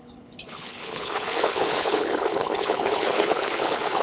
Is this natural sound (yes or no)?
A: no